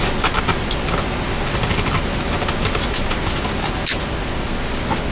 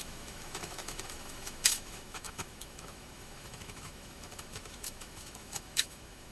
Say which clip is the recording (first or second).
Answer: first